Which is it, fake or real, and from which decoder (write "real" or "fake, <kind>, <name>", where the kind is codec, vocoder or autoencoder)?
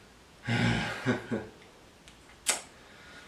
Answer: real